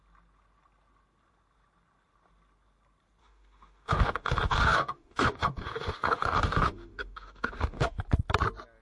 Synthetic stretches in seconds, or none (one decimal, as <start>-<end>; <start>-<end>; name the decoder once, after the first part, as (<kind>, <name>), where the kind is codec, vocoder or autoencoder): 3.2-8.0 (autoencoder, DAC-VAE)